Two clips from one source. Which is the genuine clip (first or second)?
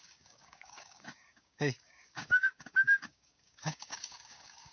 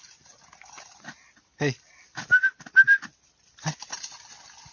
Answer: second